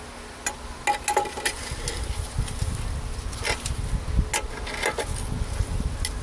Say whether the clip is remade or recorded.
recorded